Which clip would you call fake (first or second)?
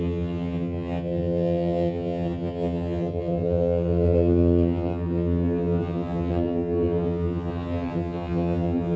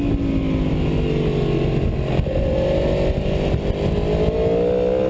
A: first